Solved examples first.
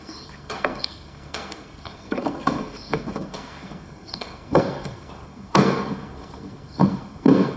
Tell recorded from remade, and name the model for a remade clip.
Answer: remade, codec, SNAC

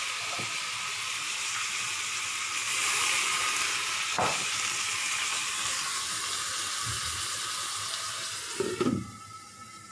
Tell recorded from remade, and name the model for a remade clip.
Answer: recorded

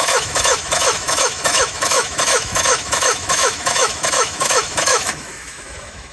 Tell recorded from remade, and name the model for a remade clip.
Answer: remade, autoencoder, DAC-VAE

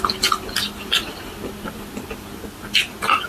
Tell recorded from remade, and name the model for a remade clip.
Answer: recorded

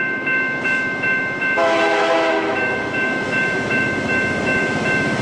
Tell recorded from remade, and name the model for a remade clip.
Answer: remade, autoencoder, DAC-VAE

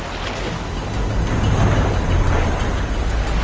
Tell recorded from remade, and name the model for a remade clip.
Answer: recorded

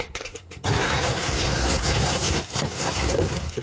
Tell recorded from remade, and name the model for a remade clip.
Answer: remade, codec, SNAC